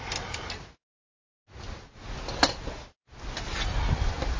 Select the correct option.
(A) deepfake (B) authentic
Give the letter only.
B